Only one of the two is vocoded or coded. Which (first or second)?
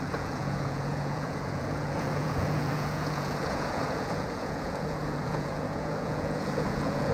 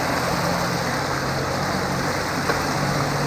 first